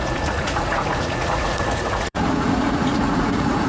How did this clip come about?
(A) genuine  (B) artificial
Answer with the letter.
B